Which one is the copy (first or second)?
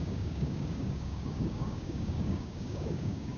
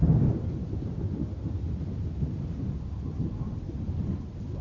first